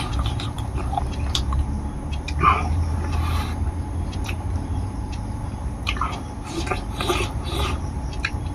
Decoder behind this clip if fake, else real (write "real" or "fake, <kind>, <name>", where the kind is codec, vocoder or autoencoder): fake, vocoder, BigVGAN v2